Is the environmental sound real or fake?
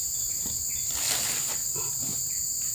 real